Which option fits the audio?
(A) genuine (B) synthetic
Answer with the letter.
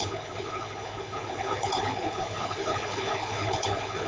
B